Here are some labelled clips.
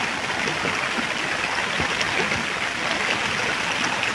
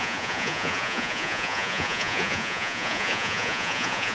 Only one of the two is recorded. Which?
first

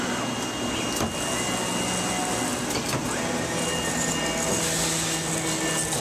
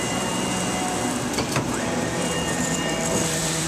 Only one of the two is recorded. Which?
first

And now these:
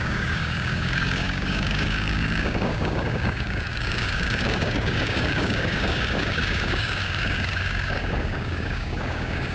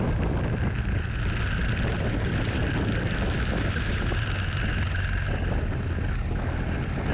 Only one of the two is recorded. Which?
second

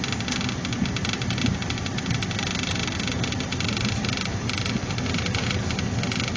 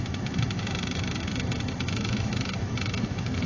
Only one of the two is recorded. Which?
first